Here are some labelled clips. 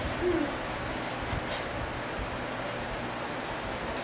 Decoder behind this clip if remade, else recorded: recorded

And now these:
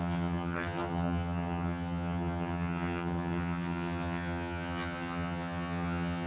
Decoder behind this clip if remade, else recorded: remade, vocoder, HiFi-GAN